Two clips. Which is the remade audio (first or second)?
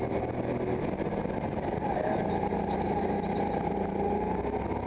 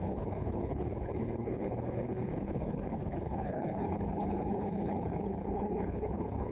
second